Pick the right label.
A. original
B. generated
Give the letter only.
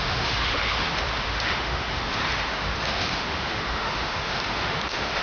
B